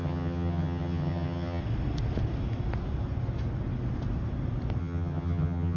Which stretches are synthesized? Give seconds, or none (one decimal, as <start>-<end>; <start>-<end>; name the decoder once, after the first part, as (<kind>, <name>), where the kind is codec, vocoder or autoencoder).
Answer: 0.0-1.6 (vocoder, HiFi-GAN); 4.8-5.8

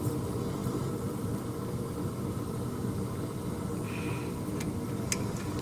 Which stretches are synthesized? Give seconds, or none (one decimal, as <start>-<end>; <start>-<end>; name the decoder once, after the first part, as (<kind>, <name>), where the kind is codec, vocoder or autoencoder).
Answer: none

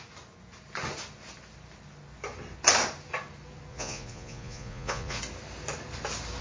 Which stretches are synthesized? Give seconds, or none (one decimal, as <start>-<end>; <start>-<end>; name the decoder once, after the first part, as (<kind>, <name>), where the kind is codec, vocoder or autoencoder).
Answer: 3.7-5.2 (vocoder, Vocos)